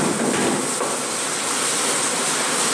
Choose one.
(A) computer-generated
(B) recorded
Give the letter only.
B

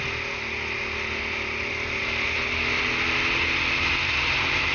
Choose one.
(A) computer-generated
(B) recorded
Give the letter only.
B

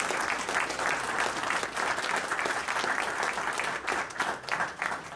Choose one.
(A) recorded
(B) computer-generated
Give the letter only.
A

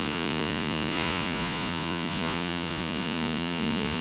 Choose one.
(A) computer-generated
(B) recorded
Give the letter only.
A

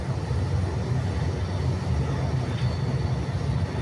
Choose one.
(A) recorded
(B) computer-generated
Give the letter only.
A